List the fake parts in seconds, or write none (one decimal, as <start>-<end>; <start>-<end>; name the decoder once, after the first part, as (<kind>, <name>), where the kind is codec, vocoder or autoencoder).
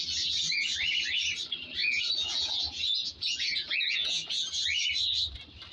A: 1.8-4.4 (vocoder, Vocos)